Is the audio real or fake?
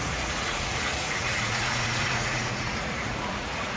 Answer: fake